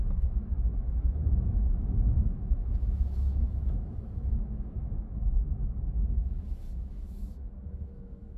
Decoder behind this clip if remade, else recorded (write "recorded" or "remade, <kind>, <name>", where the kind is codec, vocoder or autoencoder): remade, autoencoder, DAC-VAE